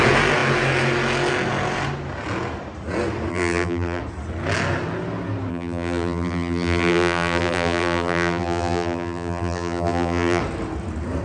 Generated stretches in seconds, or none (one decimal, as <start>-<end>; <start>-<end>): 3.3-4.0; 5.5-10.4